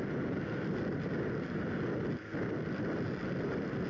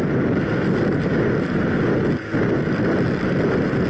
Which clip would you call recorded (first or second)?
second